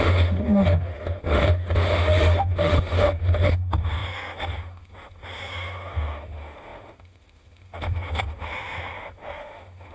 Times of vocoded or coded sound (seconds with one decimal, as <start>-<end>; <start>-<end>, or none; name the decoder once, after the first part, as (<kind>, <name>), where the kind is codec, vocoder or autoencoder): 0.0-9.9 (autoencoder, DAC-VAE)